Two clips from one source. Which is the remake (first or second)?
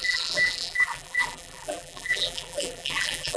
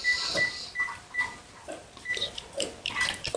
first